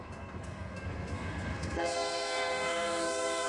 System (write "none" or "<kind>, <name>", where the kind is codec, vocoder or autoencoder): codec, SNAC